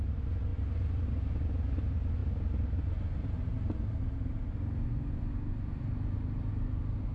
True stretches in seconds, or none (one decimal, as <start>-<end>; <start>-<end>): 0.0-7.1